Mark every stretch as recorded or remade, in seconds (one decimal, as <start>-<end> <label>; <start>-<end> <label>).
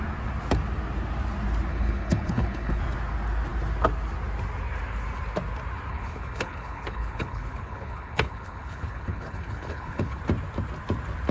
0.0-1.7 recorded; 1.7-2.8 remade; 2.8-5.9 recorded; 5.9-10.2 remade; 10.2-11.3 recorded